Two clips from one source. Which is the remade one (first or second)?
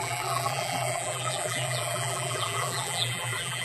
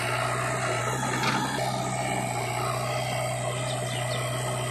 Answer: first